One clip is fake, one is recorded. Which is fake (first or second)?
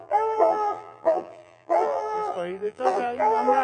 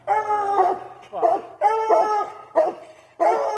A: first